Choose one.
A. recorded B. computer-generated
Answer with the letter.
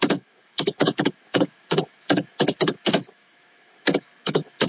B